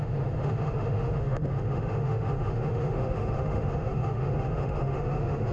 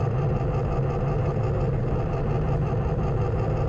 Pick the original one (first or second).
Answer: second